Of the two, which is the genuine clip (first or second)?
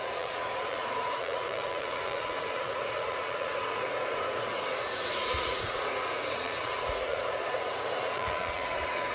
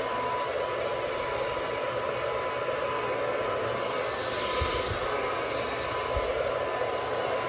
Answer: second